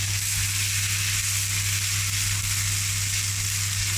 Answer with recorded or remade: recorded